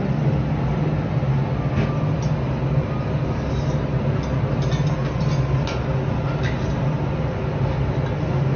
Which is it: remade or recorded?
recorded